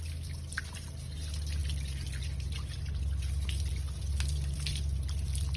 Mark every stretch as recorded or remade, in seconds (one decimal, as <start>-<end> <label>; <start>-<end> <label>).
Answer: 0.0-5.6 recorded